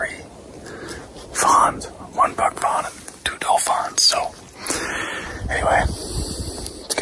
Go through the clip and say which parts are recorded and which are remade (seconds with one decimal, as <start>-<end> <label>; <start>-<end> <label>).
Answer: 0.0-7.0 recorded